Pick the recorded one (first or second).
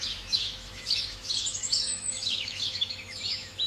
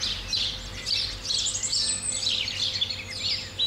second